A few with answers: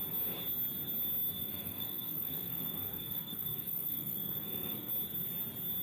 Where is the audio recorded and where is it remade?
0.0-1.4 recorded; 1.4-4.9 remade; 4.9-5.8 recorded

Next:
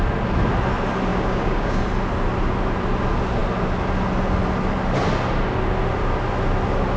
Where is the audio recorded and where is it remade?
0.0-1.1 recorded; 1.1-1.8 remade; 1.8-7.0 recorded

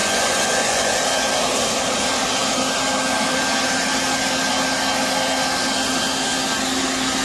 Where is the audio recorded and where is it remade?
0.0-0.9 remade; 0.9-7.2 recorded

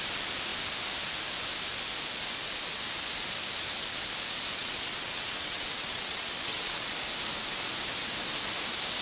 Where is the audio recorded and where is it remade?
0.0-4.6 recorded; 4.6-6.9 remade; 6.9-9.0 recorded

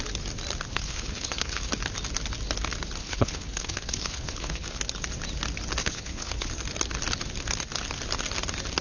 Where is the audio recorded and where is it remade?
0.0-0.7 recorded; 0.7-1.7 remade; 1.7-3.0 recorded; 3.0-4.8 remade; 4.8-5.8 recorded; 5.8-6.5 remade; 6.5-8.8 recorded

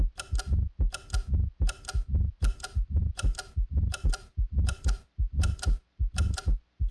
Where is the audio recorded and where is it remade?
0.0-2.3 recorded; 2.3-6.4 remade; 6.4-6.9 recorded

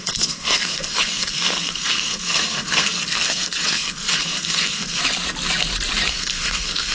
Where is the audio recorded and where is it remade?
0.0-5.0 remade; 5.0-6.1 recorded; 6.1-6.9 remade